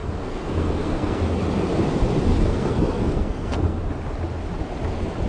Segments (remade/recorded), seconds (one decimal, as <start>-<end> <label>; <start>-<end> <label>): 0.0-1.4 remade; 1.4-2.4 recorded; 2.4-3.8 remade; 3.8-5.3 recorded